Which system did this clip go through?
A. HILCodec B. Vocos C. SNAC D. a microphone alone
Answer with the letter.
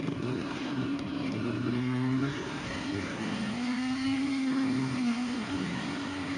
C